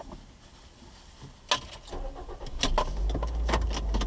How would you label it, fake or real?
real